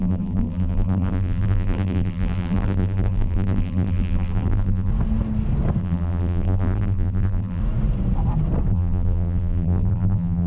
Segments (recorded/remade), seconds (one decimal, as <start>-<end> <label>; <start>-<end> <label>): 0.0-4.9 remade; 4.9-5.8 recorded; 5.8-7.6 remade; 7.6-8.7 recorded; 8.7-10.5 remade

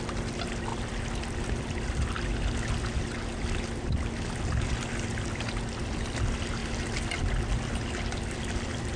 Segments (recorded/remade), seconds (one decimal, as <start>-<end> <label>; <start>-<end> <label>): 0.0-9.0 recorded

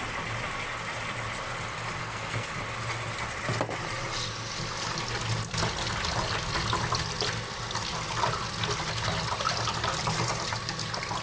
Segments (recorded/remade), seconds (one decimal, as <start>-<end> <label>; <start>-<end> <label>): 0.0-2.0 recorded; 2.0-2.6 remade; 2.6-11.2 recorded

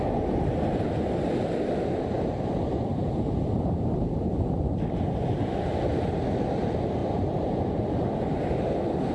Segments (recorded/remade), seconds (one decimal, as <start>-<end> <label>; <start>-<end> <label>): 0.0-2.9 recorded; 2.9-3.6 remade; 3.6-7.0 recorded; 7.0-7.6 remade; 7.6-9.1 recorded

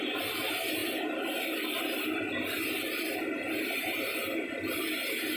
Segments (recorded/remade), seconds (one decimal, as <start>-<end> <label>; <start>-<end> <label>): 0.0-4.2 recorded; 4.2-4.9 remade; 4.9-5.4 recorded

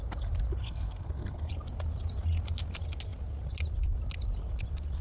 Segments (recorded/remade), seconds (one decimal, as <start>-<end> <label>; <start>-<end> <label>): 0.0-0.6 recorded; 0.6-1.5 remade; 1.5-5.0 recorded

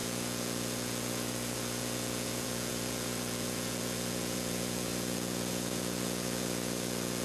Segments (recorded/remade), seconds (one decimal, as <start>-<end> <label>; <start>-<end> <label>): 0.0-7.2 remade